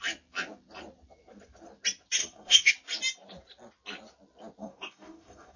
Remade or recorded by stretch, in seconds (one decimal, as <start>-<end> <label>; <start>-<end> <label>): 0.0-2.2 recorded; 2.2-2.7 remade; 2.7-4.6 recorded; 4.6-5.6 remade